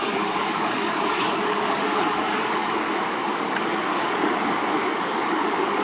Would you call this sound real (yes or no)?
no